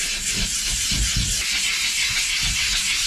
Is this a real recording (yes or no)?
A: yes